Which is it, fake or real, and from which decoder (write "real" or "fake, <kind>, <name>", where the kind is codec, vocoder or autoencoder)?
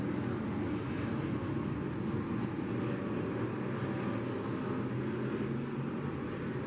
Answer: real